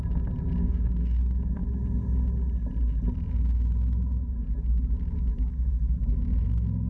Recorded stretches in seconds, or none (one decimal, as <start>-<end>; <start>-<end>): 0.0-0.6; 1.2-6.9